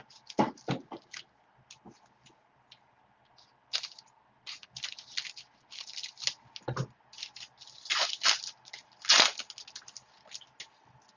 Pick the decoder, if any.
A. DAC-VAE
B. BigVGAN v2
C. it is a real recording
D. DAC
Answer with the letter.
C